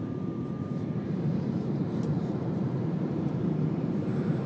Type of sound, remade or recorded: remade